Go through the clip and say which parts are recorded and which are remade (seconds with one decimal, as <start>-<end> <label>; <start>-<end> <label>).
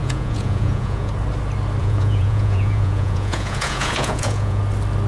0.0-1.1 remade; 1.1-1.8 recorded; 1.8-4.6 remade; 4.6-5.1 recorded